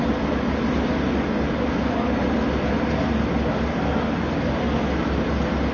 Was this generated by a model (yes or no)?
no